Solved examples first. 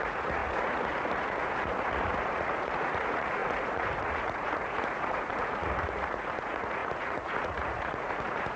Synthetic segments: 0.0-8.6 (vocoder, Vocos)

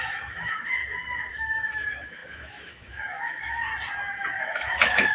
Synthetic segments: 0.0-0.8 (autoencoder, DAC-VAE); 1.3-3.7; 4.4-5.1

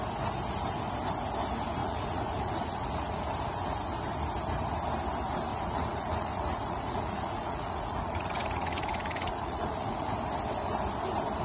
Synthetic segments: 1.8-3.1 (vocoder, Vocos); 5.5-10.1

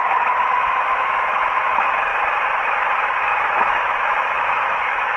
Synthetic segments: 0.0-2.1 (autoencoder, DAC-VAE); 3.2-5.2